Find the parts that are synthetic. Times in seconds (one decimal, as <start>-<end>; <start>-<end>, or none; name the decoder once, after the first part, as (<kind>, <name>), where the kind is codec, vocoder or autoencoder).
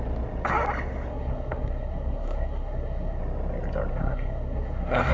1.1-3.2 (codec, SNAC); 3.9-5.1